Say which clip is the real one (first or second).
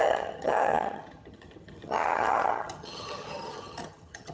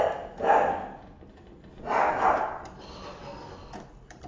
second